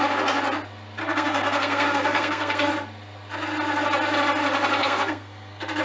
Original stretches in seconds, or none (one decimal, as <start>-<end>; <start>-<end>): 0.0-1.0; 2.7-4.8